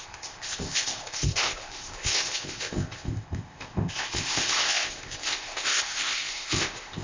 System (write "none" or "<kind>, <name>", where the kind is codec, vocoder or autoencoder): codec, ZipCodec